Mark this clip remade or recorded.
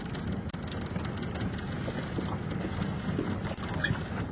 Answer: recorded